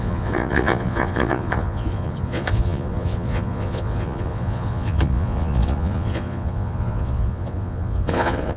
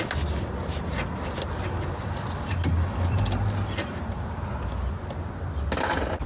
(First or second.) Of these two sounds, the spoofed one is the first